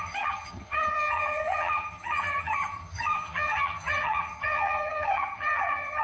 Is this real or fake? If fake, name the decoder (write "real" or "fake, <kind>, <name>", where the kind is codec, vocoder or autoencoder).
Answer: fake, vocoder, HiFi-GAN